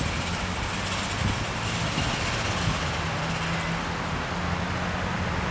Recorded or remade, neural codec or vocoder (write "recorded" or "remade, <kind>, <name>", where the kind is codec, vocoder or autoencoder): recorded